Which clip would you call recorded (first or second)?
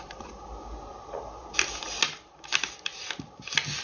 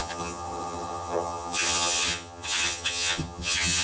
first